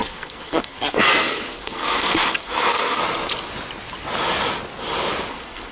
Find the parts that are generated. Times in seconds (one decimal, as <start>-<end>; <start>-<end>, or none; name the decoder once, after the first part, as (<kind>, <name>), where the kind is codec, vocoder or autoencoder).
0.0-3.0 (codec, SNAC); 5.3-5.7